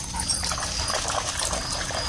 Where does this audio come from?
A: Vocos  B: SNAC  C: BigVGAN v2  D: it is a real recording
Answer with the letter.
D